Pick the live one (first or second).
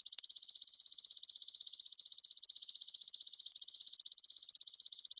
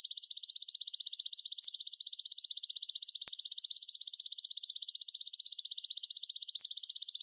second